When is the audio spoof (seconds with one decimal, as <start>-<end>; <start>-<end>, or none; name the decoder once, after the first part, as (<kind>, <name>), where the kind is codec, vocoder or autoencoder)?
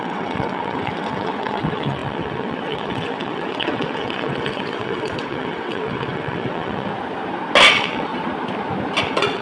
0.0-6.9 (vocoder, WaveNeXt); 7.7-8.1; 9.0-9.4